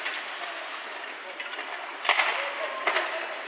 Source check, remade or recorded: recorded